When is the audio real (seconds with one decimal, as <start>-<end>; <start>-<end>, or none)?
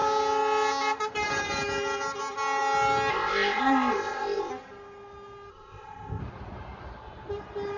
0.0-3.1; 4.5-5.5; 6.2-7.8